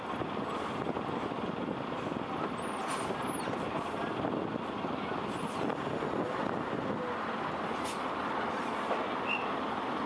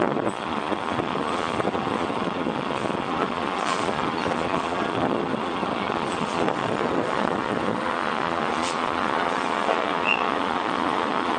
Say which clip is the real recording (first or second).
first